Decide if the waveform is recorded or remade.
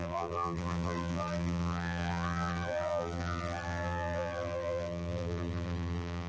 remade